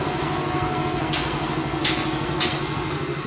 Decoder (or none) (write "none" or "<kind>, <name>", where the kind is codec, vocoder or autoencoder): codec, SNAC